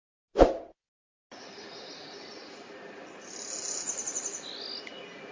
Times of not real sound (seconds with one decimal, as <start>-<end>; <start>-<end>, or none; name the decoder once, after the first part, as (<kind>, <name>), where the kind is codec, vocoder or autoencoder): none